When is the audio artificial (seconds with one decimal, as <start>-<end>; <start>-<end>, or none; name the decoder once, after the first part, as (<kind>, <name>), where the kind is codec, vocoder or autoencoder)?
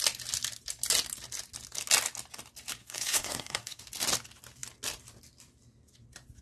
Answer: 2.8-3.8 (codec, SNAC)